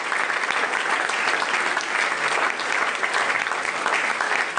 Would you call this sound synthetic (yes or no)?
no